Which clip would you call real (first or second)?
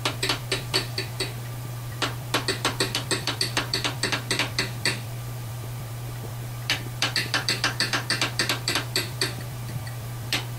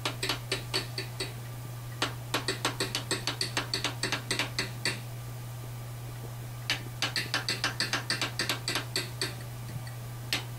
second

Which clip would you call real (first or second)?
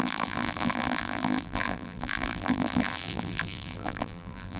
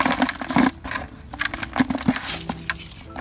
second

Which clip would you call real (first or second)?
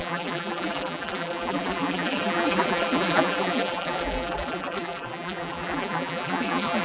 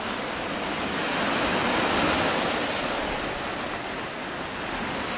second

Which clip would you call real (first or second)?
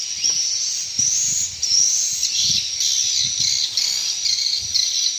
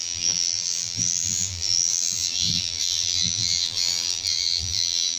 first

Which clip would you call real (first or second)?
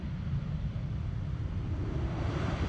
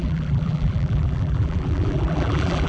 first